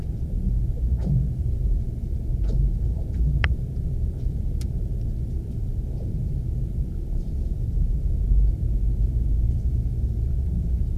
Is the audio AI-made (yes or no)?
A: yes